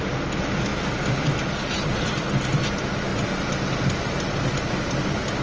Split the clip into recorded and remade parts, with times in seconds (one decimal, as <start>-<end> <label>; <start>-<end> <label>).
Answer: 0.0-5.4 recorded